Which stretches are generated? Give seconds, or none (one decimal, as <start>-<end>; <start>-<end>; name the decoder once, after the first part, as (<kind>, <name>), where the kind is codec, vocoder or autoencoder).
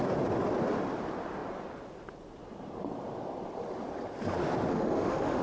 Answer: 4.7-5.4 (autoencoder, DAC-VAE)